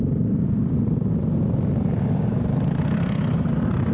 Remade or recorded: remade